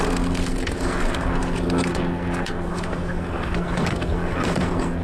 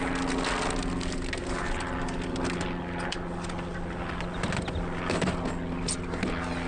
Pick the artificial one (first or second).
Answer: first